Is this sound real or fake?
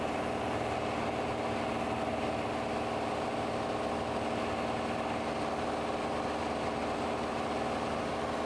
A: real